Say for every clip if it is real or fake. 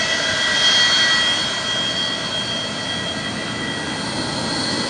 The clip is real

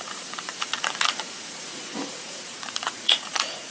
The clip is fake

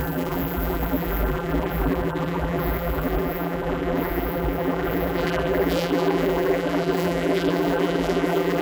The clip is fake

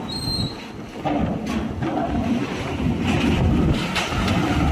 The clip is real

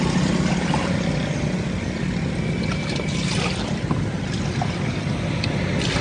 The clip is real